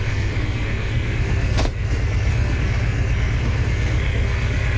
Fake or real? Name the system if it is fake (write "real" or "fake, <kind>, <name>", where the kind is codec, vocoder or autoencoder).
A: fake, codec, SNAC